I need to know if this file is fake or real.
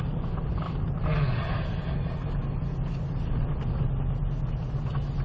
real